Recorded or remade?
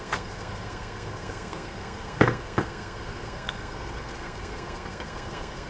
remade